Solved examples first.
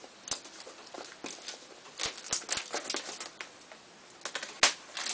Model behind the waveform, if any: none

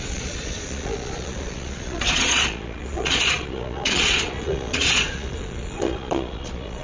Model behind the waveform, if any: vocoder, Vocos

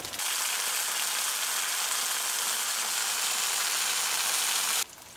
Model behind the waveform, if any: none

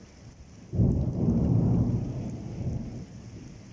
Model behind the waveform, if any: none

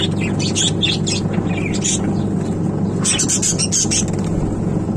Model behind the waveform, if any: none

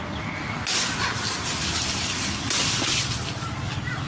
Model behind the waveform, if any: none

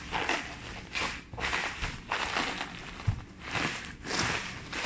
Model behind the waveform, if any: none